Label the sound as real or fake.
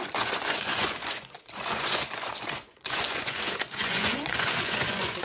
fake